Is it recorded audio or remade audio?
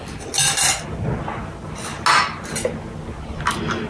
recorded